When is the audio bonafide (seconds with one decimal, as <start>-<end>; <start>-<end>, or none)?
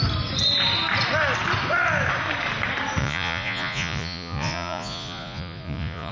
0.0-3.0